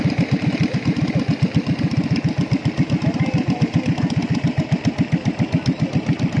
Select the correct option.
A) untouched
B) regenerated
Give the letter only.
A